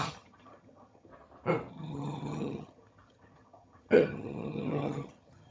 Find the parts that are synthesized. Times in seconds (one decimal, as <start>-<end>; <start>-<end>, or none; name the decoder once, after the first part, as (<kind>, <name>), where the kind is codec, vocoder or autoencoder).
0.0-1.1 (vocoder, HiFi-GAN); 1.7-5.5